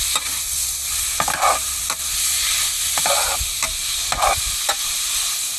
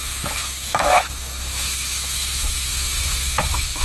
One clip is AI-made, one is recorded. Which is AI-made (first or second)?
second